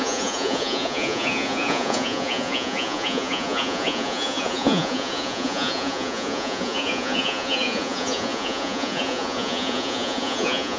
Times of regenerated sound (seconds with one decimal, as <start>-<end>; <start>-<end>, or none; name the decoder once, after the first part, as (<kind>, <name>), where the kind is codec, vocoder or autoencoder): 0.0-10.8 (vocoder, Vocos)